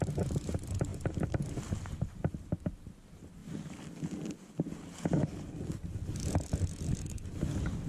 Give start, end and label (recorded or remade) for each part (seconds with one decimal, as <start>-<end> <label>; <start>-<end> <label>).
0.0-7.9 recorded

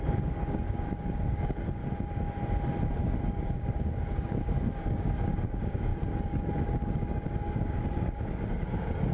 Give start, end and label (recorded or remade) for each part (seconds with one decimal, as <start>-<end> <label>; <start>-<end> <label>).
0.0-1.8 remade; 1.8-3.0 recorded; 3.0-9.1 remade

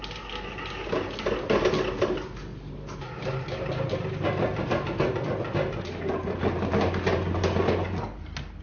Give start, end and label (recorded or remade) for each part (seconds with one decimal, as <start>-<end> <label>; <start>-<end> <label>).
0.0-8.6 recorded